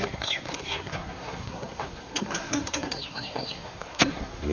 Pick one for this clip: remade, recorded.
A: remade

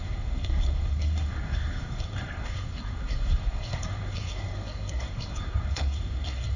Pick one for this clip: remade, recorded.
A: remade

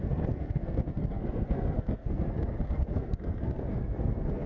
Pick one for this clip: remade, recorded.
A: remade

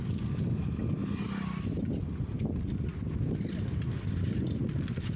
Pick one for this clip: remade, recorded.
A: recorded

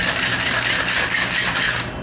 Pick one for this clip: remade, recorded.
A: recorded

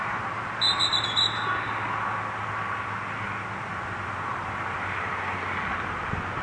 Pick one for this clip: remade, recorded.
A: recorded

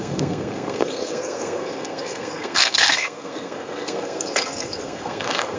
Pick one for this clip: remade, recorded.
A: remade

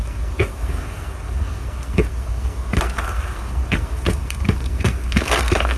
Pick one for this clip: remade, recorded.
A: remade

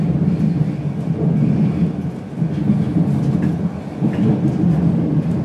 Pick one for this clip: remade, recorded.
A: recorded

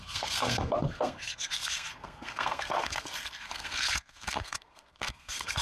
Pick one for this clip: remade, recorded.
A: remade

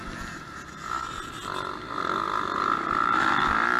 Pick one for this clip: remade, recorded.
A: recorded